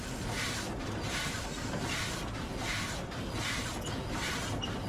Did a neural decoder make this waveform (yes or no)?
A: no